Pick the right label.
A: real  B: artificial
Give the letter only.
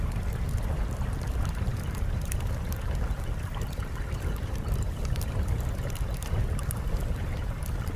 A